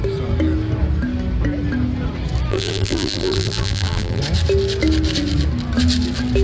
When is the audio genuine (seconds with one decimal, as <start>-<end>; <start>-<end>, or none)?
0.0-2.5; 4.2-6.4